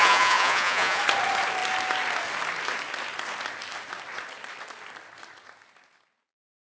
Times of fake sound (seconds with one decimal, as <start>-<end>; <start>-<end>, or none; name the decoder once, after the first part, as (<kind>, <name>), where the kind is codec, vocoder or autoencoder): 0.0-1.0 (vocoder, Vocos)